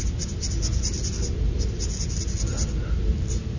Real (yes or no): yes